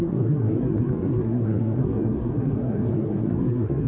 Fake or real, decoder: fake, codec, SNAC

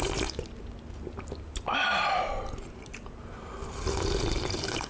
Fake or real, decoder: real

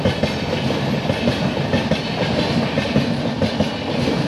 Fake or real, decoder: real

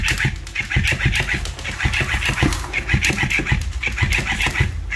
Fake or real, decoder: real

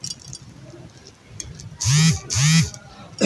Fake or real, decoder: real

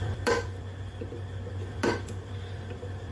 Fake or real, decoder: fake, vocoder, BigVGAN v2